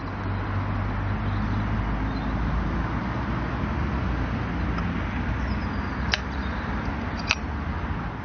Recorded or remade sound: recorded